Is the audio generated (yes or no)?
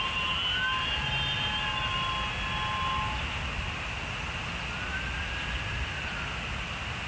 no